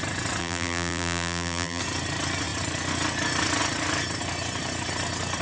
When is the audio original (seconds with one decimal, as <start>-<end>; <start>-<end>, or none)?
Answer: 0.0-0.4; 1.8-5.4